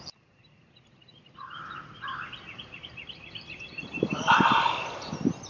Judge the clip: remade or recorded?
remade